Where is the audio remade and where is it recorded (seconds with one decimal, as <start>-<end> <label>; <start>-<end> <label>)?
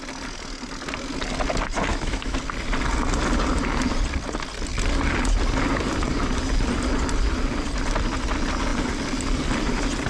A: 0.0-1.9 recorded; 1.9-2.4 remade; 2.4-10.1 recorded